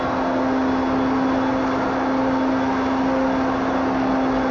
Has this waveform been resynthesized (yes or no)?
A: no